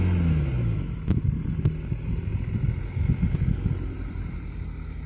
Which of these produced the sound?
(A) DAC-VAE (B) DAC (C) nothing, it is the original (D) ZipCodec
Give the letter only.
C